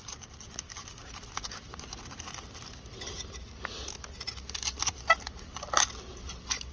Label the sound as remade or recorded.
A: recorded